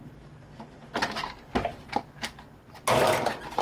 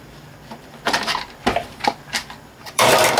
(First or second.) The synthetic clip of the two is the second